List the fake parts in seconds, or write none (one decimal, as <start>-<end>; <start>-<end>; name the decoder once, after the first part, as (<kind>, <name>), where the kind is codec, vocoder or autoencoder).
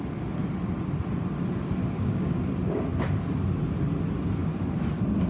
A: 1.8-2.4 (codec, DAC)